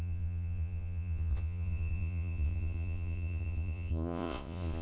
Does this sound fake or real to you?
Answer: fake